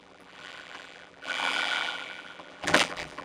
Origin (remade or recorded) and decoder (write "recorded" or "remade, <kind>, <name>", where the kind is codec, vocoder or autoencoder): remade, vocoder, BigVGAN v2